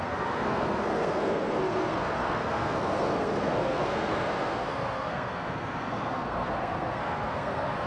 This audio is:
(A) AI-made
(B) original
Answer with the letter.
A